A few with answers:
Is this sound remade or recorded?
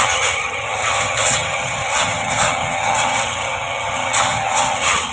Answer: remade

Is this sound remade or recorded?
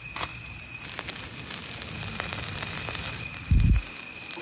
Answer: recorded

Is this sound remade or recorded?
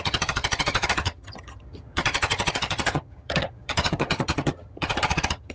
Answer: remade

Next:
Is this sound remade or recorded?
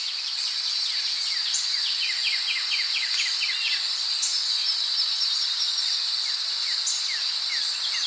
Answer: recorded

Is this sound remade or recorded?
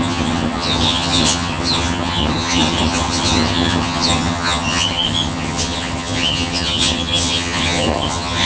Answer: remade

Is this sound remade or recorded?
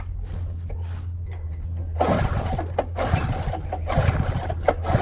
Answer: recorded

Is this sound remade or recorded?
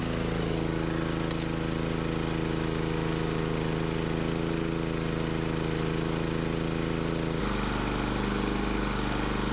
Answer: recorded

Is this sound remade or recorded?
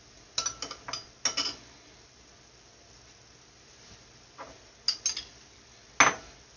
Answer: recorded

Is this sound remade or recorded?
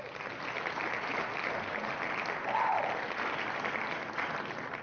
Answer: recorded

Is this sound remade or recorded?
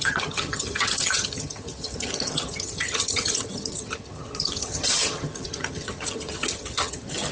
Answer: remade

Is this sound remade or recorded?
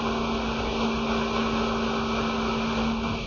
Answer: recorded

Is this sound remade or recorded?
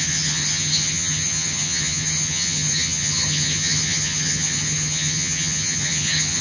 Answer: remade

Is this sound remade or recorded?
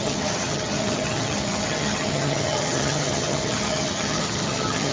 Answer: remade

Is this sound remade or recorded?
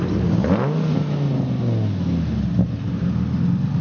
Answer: recorded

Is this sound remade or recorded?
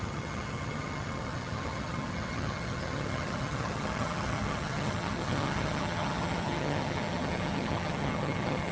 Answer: remade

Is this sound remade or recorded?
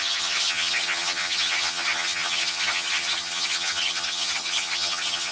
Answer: remade